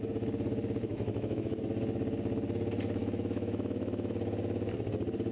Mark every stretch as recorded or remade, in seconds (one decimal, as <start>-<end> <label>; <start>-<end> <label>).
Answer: 0.0-0.8 recorded; 0.8-1.6 remade; 1.6-3.0 recorded; 3.0-4.1 remade; 4.1-5.3 recorded